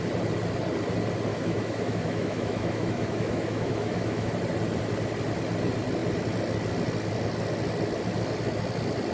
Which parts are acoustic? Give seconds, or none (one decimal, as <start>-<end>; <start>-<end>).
0.0-1.3; 4.3-9.1